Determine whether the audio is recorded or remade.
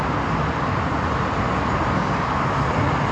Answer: recorded